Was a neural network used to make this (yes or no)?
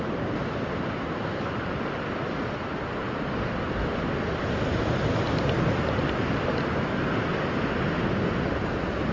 no